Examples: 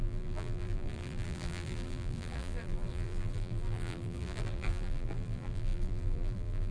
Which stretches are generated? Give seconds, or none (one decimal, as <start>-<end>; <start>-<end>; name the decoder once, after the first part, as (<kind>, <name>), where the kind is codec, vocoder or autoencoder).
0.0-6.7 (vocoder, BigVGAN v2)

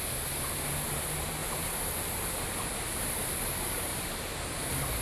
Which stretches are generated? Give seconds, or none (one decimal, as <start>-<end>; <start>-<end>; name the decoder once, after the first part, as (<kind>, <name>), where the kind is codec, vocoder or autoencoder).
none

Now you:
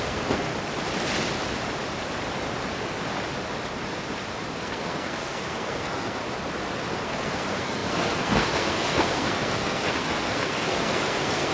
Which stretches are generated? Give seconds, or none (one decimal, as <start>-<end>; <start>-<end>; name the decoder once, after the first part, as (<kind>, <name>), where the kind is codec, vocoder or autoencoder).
0.0-0.5 (codec, SNAC); 4.6-6.2; 6.9-11.5

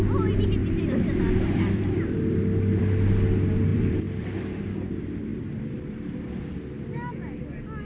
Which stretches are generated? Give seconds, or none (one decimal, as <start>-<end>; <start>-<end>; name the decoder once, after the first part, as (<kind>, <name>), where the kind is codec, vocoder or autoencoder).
0.6-2.8 (vocoder, BigVGAN v2); 3.7-4.6; 5.3-6.4

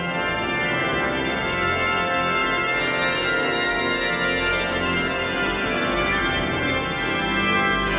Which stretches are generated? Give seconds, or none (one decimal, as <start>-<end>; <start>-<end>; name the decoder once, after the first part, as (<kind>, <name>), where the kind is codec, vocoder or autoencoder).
0.8-1.4 (vocoder, BigVGAN v2); 2.4-3.8; 4.5-6.7

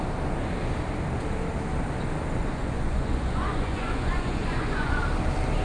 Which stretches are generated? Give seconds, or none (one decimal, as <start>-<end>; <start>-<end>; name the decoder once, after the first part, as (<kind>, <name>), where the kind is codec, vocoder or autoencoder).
2.4-5.0 (vocoder, Vocos)

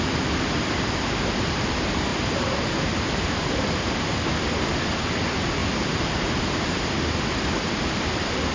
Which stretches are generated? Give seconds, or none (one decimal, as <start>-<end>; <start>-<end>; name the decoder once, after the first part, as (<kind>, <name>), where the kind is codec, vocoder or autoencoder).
2.1-3.6 (vocoder, BigVGAN v2)